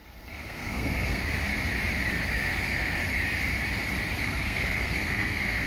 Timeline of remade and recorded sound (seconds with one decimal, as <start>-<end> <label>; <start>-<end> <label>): 0.0-1.5 remade; 1.5-2.1 recorded; 2.1-3.0 remade; 3.0-4.2 recorded; 4.2-5.7 remade